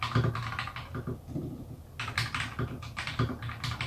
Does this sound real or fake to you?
real